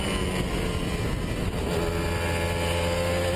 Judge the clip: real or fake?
real